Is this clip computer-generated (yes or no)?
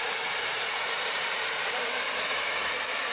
yes